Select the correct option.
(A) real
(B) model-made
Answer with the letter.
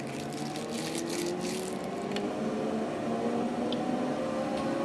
A